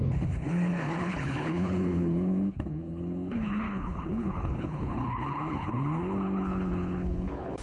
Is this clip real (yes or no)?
no